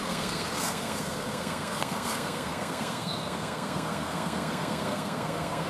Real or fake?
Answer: fake